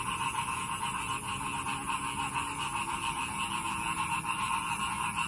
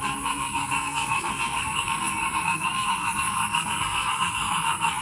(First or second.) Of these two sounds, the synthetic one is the second